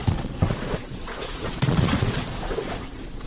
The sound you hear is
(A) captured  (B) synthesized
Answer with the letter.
B